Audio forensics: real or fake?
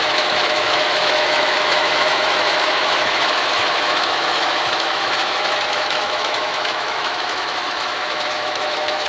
fake